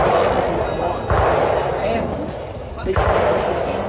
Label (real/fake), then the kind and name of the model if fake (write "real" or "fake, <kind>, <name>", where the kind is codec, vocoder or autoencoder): real